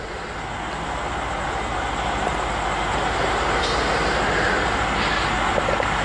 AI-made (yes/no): no